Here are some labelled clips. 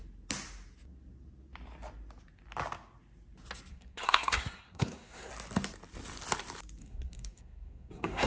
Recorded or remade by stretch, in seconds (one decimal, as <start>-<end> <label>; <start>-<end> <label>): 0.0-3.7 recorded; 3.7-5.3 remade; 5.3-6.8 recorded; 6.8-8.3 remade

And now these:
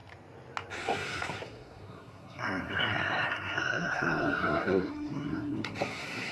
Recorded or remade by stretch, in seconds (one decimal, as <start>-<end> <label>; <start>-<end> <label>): 0.0-0.7 recorded; 0.7-6.3 remade

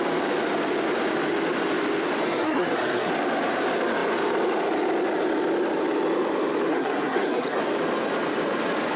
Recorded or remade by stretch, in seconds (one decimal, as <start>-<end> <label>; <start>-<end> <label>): 0.0-2.2 recorded; 2.2-3.1 remade; 3.1-6.7 recorded; 6.7-7.6 remade; 7.6-9.0 recorded

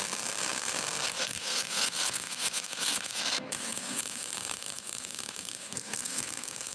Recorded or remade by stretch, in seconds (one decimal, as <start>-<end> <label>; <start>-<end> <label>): 0.0-6.7 remade

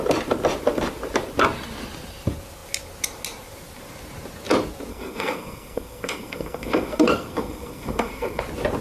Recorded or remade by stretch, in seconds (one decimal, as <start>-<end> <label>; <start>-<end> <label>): 0.0-4.9 recorded; 4.9-8.4 remade; 8.4-8.8 recorded

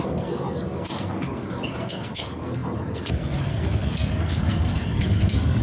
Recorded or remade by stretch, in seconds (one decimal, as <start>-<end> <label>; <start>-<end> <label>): 0.0-5.6 remade